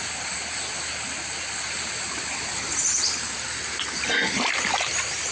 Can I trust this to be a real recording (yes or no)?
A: yes